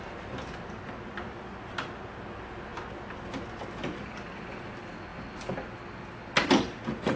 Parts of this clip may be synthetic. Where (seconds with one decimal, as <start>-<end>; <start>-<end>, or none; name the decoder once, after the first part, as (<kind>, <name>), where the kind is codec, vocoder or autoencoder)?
none